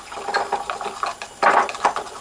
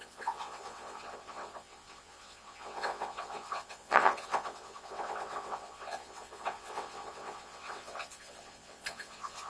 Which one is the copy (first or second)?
second